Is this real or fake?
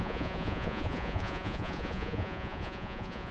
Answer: fake